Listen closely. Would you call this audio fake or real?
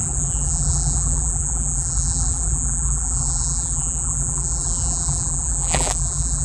fake